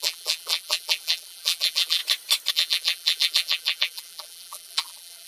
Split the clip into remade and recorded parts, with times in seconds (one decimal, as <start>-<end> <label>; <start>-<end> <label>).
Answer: 0.0-2.0 remade; 2.0-2.5 recorded; 2.5-5.3 remade